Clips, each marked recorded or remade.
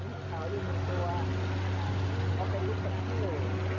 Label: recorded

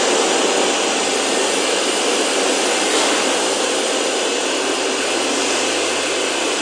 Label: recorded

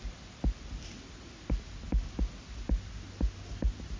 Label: recorded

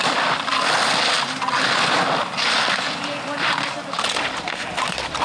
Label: recorded